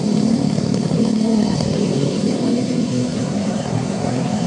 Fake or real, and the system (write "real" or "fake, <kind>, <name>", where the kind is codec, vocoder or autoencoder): fake, codec, SNAC